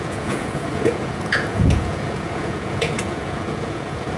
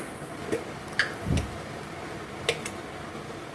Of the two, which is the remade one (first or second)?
first